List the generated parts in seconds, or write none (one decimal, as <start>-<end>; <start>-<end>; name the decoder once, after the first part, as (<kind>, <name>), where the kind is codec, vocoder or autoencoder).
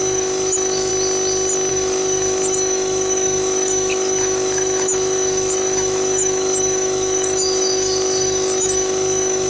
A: 0.0-0.9 (autoencoder, DAC-VAE); 1.7-9.5